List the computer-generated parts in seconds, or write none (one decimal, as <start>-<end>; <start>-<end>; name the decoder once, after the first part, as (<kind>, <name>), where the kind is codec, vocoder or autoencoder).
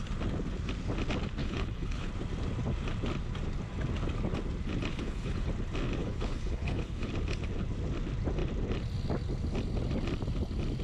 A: 1.4-2.1 (codec, HILCodec); 4.9-5.5; 6.0-7.1